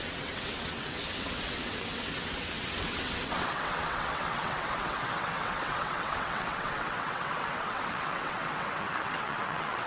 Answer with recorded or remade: remade